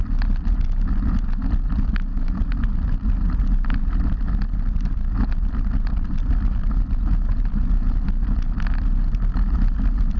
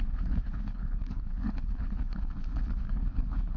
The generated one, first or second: second